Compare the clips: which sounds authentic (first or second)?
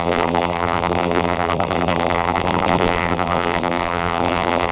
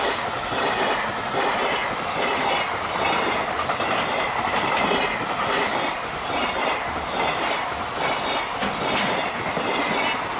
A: second